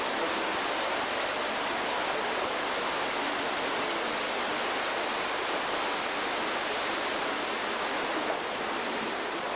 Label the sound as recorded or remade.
recorded